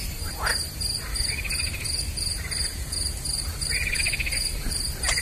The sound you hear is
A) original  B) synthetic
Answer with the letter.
B